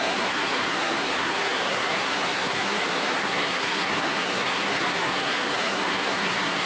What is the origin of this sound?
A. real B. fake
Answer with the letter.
B